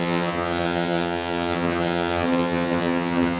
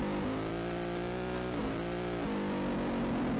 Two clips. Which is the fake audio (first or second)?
first